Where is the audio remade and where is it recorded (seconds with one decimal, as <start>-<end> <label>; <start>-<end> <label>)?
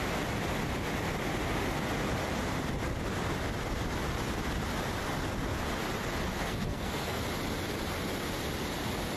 0.0-6.3 recorded; 6.3-7.2 remade; 7.2-9.2 recorded